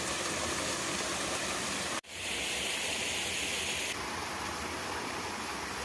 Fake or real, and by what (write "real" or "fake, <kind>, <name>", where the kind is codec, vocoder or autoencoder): real